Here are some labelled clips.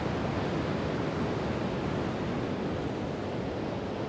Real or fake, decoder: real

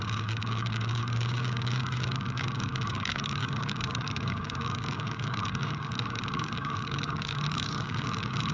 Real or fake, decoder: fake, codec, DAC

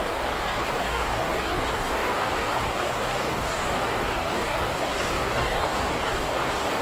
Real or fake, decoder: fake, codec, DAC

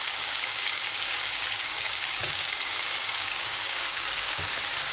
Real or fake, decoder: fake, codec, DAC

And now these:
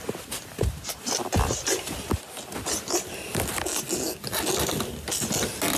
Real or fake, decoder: real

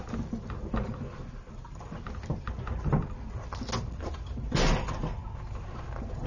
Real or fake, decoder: real